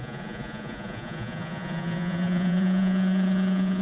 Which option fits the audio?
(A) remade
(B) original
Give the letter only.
A